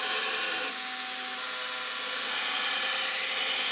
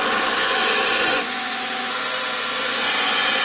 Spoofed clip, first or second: second